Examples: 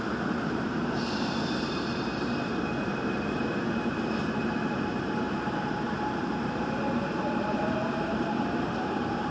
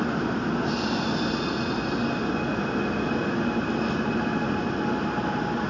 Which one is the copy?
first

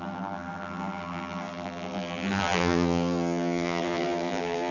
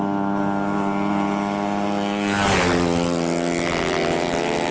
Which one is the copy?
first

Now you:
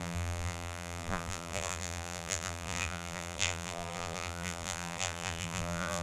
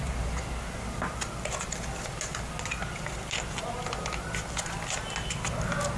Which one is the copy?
first